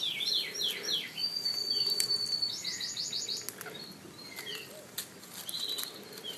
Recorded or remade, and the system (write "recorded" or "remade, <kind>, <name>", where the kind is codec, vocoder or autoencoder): recorded